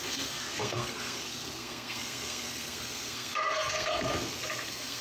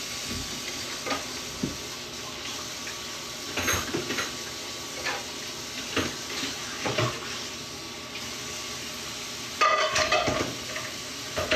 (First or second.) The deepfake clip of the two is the first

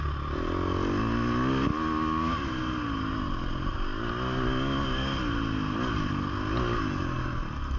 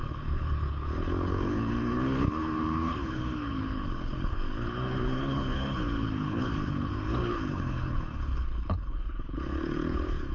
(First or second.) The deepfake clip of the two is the second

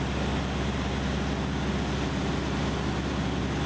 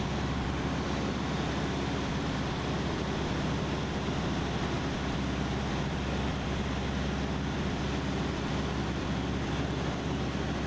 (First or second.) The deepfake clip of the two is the second